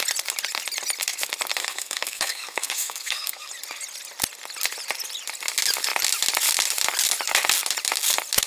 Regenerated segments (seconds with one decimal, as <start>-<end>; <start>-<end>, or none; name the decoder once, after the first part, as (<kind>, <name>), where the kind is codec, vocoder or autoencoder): 1.6-3.5 (codec, SNAC)